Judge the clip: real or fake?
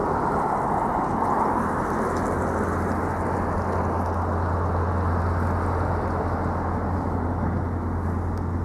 real